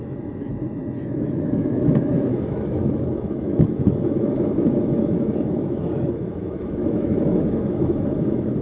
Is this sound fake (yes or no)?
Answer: yes